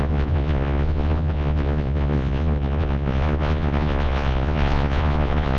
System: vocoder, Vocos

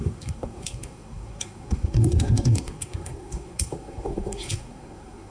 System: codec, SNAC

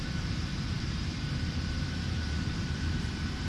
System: vocoder, BigVGAN v2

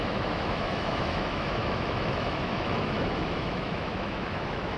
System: autoencoder, DAC-VAE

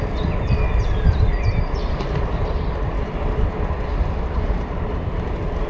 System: none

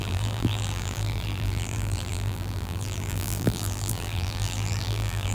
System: vocoder, BigVGAN v2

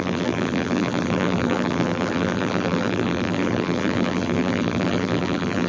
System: vocoder, BigVGAN v2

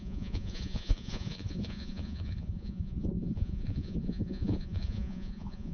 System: vocoder, Vocos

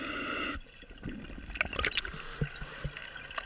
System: none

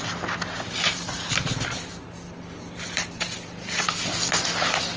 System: vocoder, BigVGAN v2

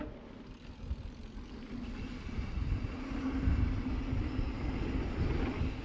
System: none